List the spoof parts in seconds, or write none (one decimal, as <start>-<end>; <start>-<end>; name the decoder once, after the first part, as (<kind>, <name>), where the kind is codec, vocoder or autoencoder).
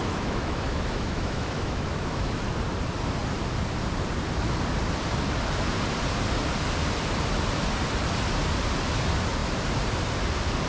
0.0-2.4 (autoencoder, DAC-VAE)